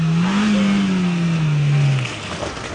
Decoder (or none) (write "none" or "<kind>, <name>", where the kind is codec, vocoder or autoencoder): none